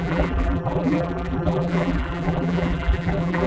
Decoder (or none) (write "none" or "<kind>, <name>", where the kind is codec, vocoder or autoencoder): vocoder, BigVGAN v2